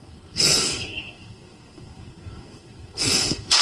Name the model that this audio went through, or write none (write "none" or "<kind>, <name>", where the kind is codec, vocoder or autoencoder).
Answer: codec, SNAC